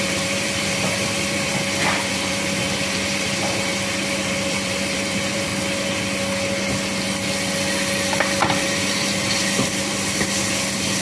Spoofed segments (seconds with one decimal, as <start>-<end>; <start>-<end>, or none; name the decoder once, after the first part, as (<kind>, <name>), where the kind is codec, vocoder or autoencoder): 0.0-1.5 (vocoder, BigVGAN v2); 2.1-3.7; 4.2-5.5; 8.6-11.0